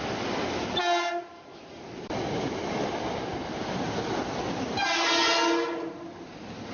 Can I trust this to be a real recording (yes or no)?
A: yes